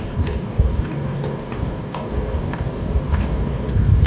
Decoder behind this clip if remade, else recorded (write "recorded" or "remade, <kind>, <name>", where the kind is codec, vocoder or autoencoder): remade, codec, DAC